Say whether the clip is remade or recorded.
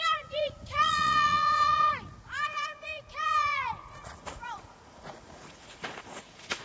remade